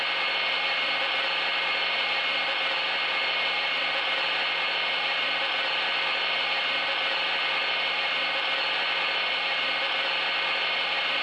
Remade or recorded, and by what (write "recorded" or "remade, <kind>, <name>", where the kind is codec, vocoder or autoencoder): remade, vocoder, BigVGAN v2